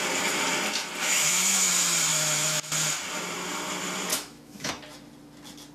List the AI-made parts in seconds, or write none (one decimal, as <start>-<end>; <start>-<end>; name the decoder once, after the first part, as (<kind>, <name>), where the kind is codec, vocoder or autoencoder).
1.0-1.7 (autoencoder, DAC-VAE); 2.1-2.7; 4.1-4.7